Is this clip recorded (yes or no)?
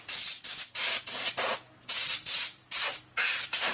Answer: no